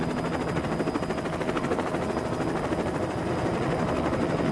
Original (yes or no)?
yes